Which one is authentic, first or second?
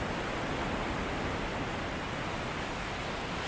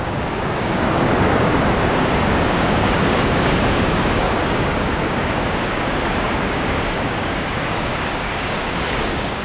first